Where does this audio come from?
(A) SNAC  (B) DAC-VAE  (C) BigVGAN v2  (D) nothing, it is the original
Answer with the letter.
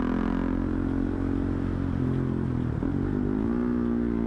D